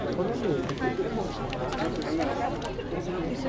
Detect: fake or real real